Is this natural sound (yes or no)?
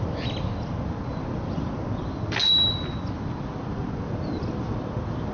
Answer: no